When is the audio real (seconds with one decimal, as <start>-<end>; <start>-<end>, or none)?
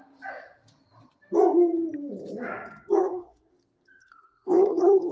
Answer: 0.0-3.0; 3.5-4.0